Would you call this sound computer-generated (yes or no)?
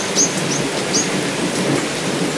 no